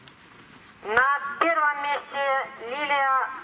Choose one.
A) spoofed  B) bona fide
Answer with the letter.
B